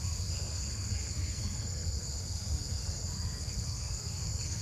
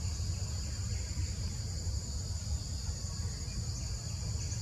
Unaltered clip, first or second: second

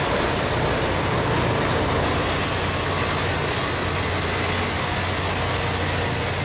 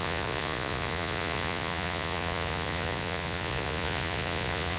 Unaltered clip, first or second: first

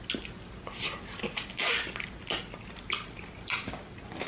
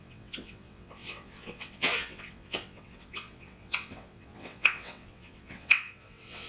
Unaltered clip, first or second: first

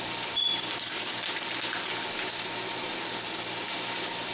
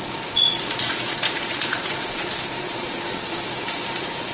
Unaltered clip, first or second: first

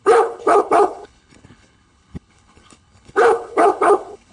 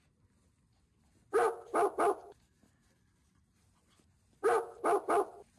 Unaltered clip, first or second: second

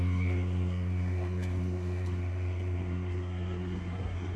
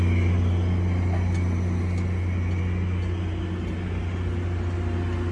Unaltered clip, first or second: second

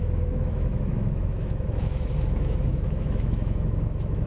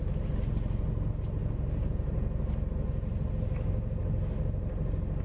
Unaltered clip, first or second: second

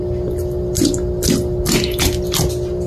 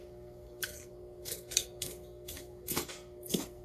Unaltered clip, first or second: first